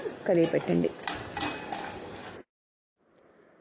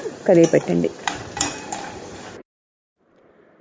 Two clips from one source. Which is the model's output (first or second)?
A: second